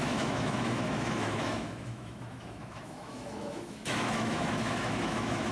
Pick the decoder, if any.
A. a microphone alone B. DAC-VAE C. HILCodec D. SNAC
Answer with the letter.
B